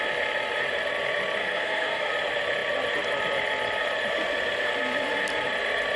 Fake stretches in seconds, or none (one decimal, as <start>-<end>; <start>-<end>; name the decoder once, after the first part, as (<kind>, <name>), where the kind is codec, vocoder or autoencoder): 1.4-2.1 (codec, SNAC)